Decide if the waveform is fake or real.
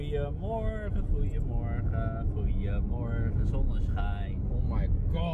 real